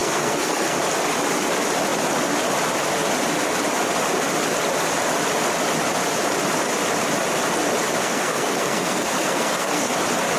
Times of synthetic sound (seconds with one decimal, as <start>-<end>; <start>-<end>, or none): 0.0-0.8; 8.0-9.9